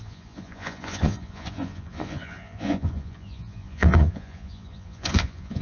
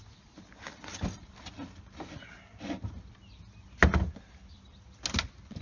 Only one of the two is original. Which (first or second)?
second